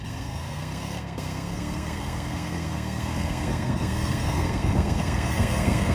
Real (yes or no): no